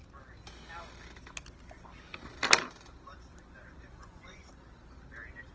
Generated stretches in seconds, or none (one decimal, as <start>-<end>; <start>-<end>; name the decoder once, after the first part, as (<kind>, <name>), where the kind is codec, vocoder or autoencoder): 3.9-4.5 (vocoder, Vocos)